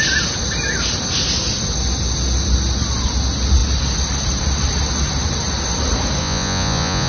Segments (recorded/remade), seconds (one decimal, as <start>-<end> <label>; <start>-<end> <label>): 0.0-6.2 recorded; 6.2-7.1 remade

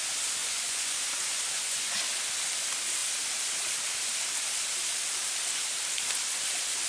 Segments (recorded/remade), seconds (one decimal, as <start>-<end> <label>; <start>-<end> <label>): 0.0-0.4 recorded; 0.4-2.0 remade; 2.0-6.9 recorded

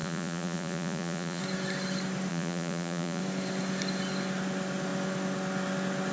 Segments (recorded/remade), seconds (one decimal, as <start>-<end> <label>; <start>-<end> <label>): 0.0-1.4 remade; 1.4-2.3 recorded; 2.3-3.2 remade; 3.2-6.1 recorded

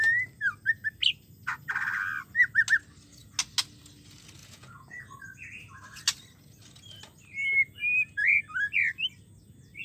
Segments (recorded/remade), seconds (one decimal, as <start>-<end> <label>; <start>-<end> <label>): 0.0-4.4 recorded; 4.4-5.0 remade; 5.0-9.8 recorded